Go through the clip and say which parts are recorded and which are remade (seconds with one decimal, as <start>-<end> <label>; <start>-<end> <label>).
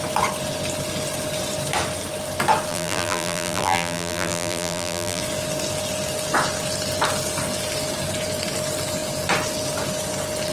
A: 0.0-2.7 recorded; 2.7-5.2 remade; 5.2-10.5 recorded